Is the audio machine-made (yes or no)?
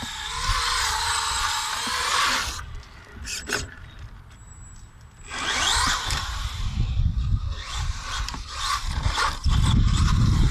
no